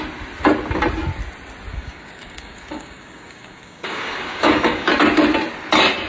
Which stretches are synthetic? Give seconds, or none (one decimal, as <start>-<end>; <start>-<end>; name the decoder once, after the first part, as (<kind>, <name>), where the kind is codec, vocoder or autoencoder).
1.7-4.9 (codec, DAC)